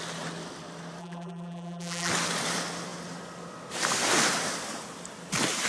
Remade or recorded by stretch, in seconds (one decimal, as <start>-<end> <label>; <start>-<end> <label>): 0.0-1.0 recorded; 1.0-2.1 remade; 2.1-5.7 recorded